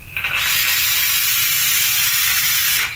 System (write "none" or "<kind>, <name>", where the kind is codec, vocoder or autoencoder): none